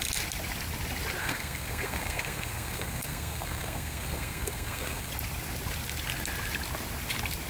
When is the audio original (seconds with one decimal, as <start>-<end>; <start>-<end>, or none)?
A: 0.0-1.2; 5.1-7.5